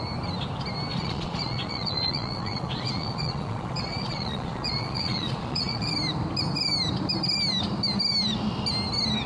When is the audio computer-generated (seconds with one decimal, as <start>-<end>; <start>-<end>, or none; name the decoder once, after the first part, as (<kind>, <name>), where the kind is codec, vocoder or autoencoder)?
0.9-5.9 (vocoder, Vocos)